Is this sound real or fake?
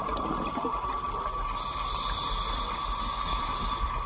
real